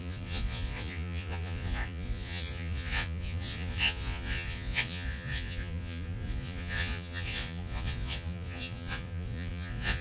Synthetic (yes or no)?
yes